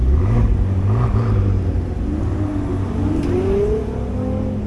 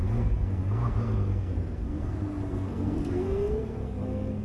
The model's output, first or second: second